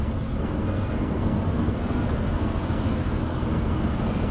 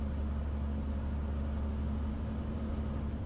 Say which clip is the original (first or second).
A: second